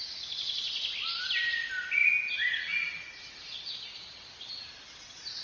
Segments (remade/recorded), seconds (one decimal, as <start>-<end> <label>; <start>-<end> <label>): 0.0-5.4 recorded